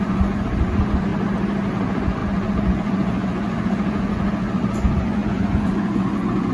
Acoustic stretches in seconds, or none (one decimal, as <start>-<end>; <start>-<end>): 1.1-1.7